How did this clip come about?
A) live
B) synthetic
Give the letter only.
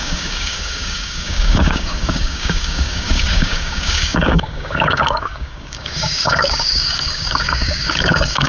B